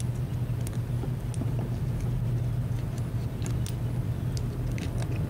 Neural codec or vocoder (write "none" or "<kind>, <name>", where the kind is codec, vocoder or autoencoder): none